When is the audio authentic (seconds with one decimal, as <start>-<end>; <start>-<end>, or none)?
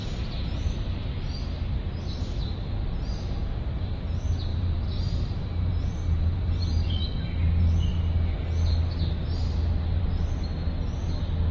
1.4-4.5; 6.9-11.5